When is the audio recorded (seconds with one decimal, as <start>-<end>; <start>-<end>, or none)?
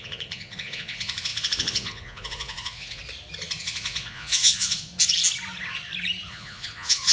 3.0-3.6; 4.9-6.3